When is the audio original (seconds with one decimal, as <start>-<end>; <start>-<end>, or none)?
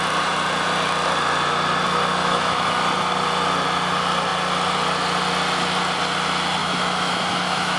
0.0-2.2; 2.8-6.6